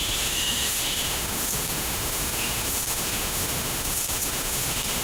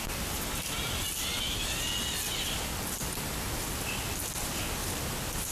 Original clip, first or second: second